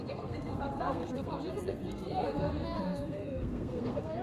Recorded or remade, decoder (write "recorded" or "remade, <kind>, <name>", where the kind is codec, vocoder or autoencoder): remade, codec, SNAC